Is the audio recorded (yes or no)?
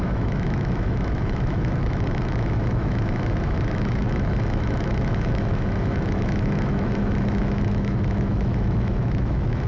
no